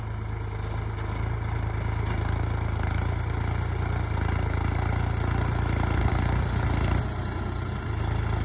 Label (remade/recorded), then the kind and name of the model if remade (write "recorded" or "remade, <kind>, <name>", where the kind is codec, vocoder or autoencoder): recorded